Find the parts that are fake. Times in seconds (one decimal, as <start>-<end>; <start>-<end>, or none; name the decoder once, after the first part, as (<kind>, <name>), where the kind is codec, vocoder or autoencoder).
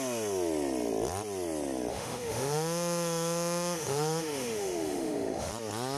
1.9-5.5 (autoencoder, DAC-VAE)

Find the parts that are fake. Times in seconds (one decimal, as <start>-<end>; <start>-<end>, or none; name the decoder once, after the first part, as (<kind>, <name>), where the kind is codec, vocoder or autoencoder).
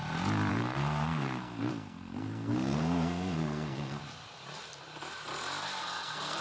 0.5-4.0 (codec, SNAC); 5.8-6.4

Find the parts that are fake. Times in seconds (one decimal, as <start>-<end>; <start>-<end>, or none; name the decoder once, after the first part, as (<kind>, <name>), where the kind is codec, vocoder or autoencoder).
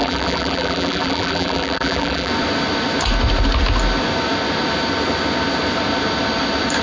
0.0-2.3 (vocoder, BigVGAN v2)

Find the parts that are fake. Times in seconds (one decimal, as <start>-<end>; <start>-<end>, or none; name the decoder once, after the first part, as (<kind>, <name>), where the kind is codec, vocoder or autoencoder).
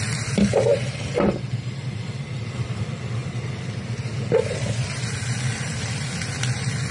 0.0-3.2 (vocoder, BigVGAN v2); 4.0-6.9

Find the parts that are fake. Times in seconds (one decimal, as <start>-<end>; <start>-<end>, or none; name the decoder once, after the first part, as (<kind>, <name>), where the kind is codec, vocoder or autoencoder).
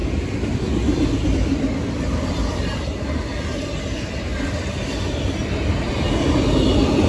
none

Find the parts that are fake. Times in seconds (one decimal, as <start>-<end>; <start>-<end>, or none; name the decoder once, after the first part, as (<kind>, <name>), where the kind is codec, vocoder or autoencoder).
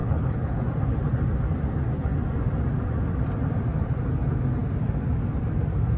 0.0-0.6 (codec, HILCodec)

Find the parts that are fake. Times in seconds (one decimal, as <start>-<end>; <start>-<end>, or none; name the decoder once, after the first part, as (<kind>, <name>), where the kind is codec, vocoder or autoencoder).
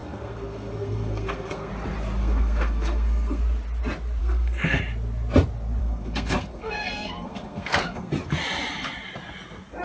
0.0-1.7 (codec, SNAC); 2.2-3.4; 4.2-4.8; 5.8-8.1